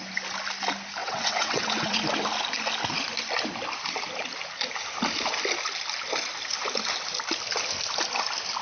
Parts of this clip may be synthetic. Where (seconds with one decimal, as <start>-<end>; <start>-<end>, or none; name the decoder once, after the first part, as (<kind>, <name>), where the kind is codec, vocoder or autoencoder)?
1.0-2.0 (vocoder, WaveNeXt)